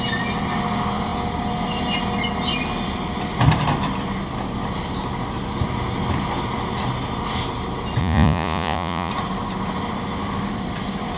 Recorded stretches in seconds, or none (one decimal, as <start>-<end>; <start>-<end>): 0.0-8.0; 9.1-11.2